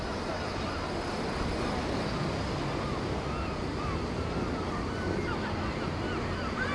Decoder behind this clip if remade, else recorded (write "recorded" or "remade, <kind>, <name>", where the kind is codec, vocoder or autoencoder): recorded